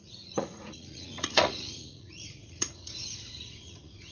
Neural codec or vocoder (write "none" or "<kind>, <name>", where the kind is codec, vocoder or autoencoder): vocoder, Vocos